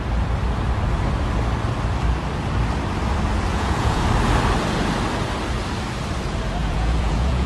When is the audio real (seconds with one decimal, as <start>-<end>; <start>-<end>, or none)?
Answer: 0.0-3.5; 4.0-6.6